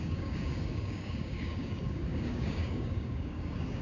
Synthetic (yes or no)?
yes